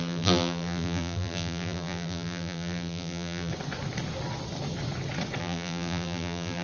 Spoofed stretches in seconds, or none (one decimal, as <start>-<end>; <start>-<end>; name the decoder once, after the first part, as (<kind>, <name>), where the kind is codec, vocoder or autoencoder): 0.0-3.5 (vocoder, BigVGAN v2); 5.4-6.6